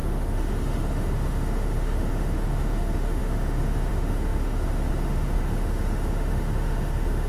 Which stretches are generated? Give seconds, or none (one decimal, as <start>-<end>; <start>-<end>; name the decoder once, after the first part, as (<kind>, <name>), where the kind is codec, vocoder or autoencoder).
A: 0.0-7.3 (autoencoder, DAC-VAE)